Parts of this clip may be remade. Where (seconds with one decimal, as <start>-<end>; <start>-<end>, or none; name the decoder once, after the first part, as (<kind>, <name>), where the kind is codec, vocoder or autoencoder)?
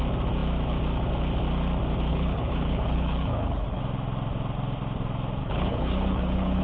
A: 2.1-3.8 (codec, HILCodec); 5.4-6.6